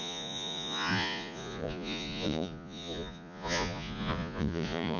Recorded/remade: remade